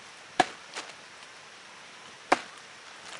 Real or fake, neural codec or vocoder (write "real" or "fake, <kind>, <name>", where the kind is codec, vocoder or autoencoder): real